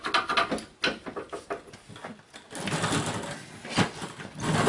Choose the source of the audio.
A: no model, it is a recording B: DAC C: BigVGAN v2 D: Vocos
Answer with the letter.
A